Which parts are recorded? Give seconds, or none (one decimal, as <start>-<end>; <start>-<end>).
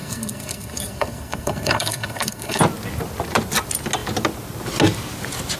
2.6-5.6